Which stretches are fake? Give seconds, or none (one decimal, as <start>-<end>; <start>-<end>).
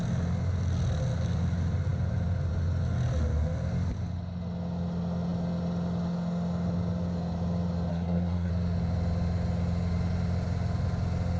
7.9-8.5